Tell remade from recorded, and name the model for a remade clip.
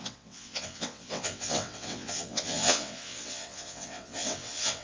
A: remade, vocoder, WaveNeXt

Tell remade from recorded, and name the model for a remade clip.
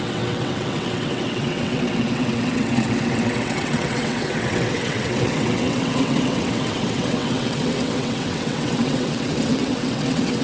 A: remade, vocoder, WaveNeXt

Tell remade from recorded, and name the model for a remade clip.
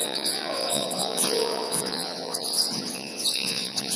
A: remade, vocoder, WaveNeXt